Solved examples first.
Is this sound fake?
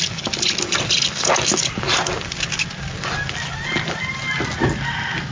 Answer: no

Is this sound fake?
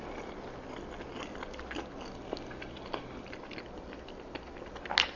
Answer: no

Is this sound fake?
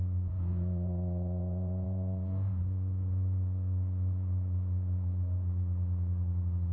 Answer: yes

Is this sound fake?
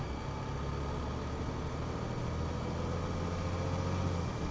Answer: no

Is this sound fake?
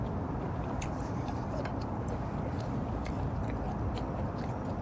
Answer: yes